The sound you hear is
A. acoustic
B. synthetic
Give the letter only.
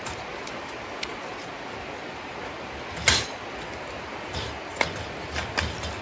A